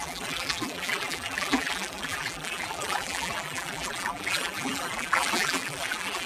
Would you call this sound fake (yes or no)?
yes